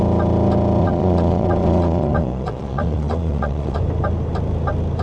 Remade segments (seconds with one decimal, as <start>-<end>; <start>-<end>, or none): 0.8-3.8